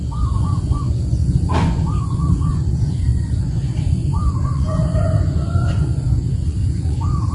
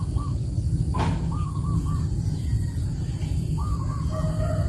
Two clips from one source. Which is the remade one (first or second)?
first